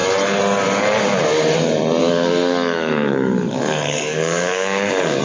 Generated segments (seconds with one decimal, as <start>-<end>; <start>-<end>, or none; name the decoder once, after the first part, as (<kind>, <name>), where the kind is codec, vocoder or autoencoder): 2.0-5.2 (codec, DAC)